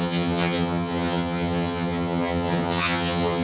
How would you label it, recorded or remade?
remade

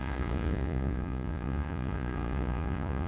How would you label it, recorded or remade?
remade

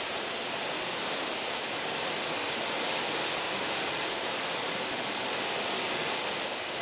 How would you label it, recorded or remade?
recorded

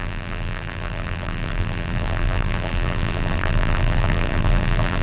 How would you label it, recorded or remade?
remade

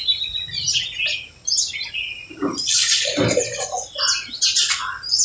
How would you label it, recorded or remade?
recorded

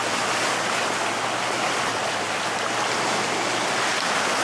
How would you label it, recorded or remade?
recorded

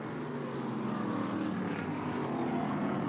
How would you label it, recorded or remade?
recorded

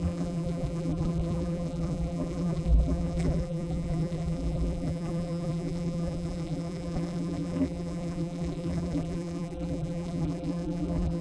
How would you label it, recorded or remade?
remade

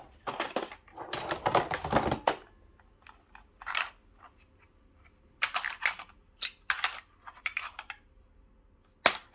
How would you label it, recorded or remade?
recorded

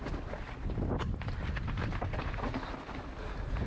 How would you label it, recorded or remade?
recorded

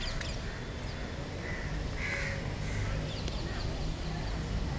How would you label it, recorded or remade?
recorded